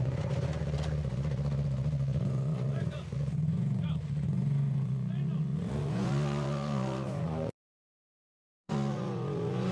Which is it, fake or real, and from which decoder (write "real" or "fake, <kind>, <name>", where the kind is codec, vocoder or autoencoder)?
fake, vocoder, Vocos